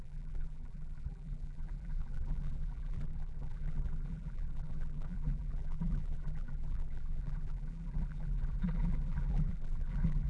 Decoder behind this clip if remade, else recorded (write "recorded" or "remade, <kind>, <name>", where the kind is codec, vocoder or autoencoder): remade, vocoder, BigVGAN v2